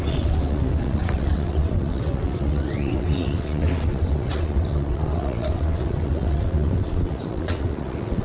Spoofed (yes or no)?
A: yes